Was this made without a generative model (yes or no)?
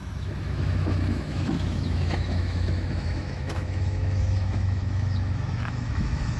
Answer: no